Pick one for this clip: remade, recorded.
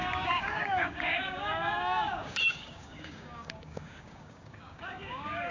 remade